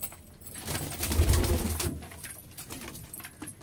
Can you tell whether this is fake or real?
real